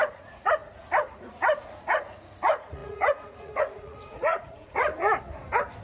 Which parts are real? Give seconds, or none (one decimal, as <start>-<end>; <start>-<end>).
4.9-5.8